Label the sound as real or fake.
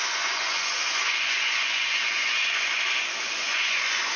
fake